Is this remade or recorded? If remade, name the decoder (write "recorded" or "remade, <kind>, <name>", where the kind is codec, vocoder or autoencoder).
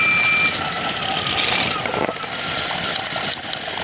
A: recorded